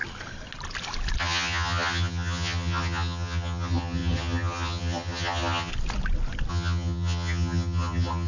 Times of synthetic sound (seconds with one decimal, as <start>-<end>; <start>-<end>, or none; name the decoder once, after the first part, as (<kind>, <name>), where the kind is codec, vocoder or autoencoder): 1.2-5.7 (vocoder, HiFi-GAN); 6.5-8.3